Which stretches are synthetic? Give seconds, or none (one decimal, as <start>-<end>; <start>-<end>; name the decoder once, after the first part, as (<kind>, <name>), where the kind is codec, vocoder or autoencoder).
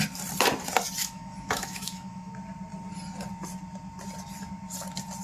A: 1.0-2.3 (autoencoder, DAC-VAE)